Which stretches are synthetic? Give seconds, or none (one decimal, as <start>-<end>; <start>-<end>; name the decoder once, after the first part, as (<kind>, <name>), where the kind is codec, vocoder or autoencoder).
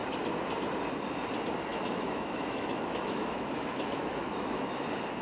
1.7-4.8 (autoencoder, DAC-VAE)